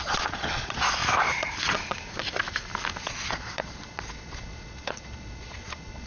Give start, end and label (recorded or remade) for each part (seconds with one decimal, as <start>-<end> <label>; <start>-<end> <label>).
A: 0.0-1.0 remade; 1.0-3.0 recorded; 3.0-6.1 remade